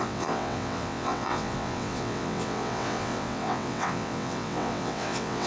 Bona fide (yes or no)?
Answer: no